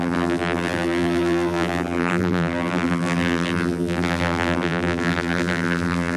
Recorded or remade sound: remade